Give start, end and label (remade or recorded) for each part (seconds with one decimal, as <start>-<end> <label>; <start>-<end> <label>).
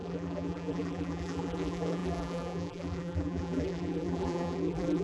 0.0-5.0 remade